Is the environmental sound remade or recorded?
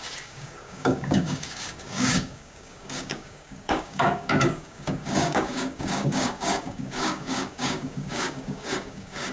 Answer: remade